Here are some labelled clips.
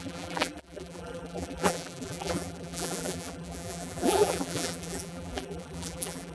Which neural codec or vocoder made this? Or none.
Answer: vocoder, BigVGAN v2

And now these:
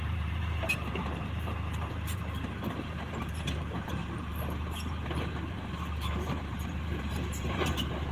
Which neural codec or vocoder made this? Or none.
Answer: vocoder, BigVGAN v2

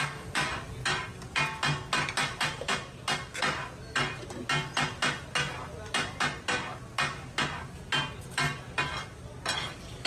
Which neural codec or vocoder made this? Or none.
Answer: none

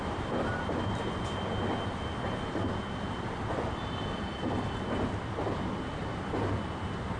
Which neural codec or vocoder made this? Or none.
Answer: vocoder, BigVGAN v2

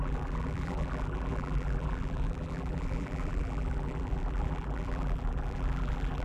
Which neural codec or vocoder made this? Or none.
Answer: vocoder, BigVGAN v2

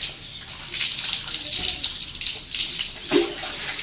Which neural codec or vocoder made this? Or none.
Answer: none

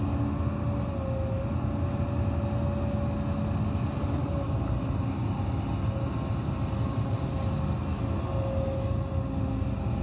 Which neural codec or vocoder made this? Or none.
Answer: none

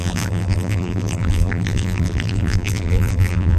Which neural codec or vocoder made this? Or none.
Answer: vocoder, BigVGAN v2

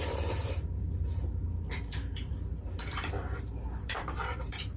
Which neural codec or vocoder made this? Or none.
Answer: vocoder, BigVGAN v2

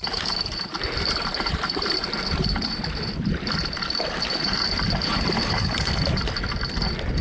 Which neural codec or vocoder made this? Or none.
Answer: vocoder, BigVGAN v2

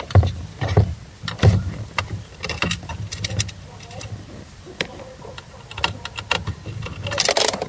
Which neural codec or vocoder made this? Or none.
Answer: none